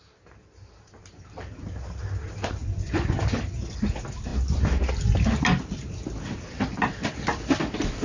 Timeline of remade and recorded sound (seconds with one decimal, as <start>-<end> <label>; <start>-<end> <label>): 0.0-8.0 recorded